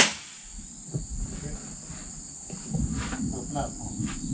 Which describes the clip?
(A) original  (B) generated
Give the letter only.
A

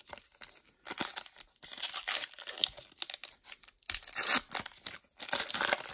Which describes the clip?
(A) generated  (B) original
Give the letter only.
B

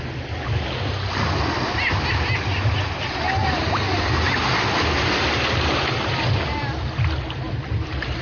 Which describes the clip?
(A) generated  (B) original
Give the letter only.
B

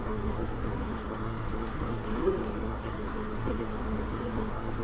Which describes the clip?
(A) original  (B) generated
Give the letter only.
B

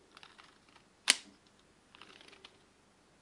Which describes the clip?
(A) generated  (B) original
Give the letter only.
B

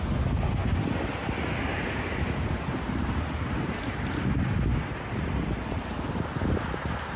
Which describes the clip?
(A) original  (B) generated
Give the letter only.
A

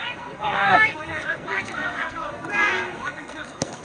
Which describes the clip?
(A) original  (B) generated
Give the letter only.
B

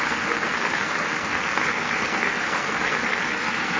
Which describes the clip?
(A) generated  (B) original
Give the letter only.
A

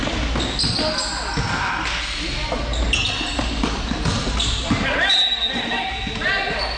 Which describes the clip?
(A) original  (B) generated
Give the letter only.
A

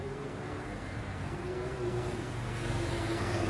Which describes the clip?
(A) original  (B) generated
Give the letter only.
B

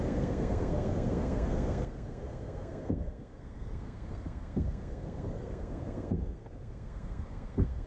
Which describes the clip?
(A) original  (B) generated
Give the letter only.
B